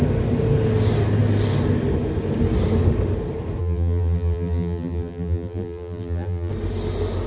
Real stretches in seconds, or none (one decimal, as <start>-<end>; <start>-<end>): 0.0-3.6; 6.5-7.3